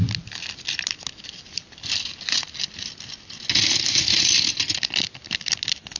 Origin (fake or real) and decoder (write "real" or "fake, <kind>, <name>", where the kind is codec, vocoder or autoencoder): real